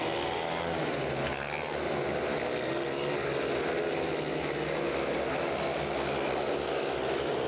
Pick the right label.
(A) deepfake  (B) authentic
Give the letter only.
B